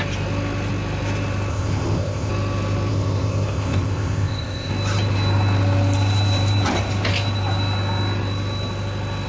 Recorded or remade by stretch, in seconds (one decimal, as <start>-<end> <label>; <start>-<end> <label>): 0.0-1.5 recorded; 1.5-2.3 remade; 2.3-2.9 recorded; 2.9-4.7 remade; 4.7-9.3 recorded